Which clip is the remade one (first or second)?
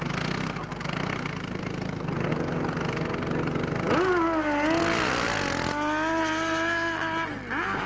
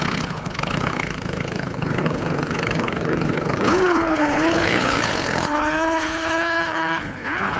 second